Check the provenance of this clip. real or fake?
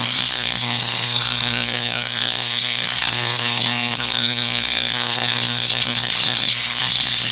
fake